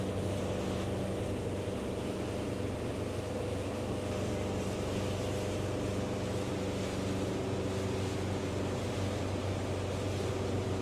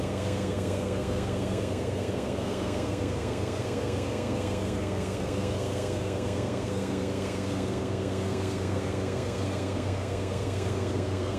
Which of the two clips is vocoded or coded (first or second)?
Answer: second